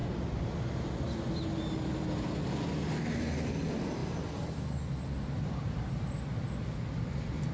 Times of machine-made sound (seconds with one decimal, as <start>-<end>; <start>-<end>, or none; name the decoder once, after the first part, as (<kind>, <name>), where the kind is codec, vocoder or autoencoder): 0.0-0.9 (vocoder, BigVGAN v2)